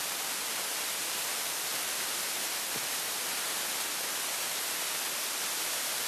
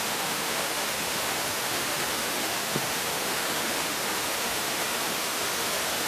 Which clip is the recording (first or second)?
first